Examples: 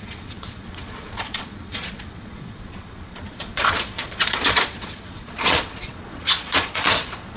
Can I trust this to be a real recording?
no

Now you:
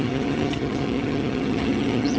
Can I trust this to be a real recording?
no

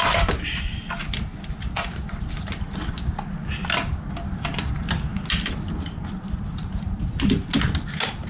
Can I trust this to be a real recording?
yes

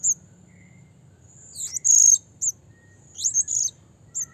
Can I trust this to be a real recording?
yes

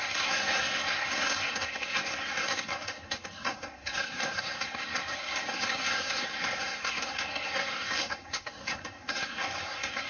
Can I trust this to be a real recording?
no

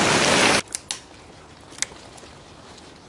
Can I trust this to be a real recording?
yes